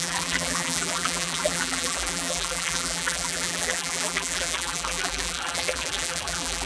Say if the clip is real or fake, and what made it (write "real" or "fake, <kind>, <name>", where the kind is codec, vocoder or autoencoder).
fake, vocoder, BigVGAN v2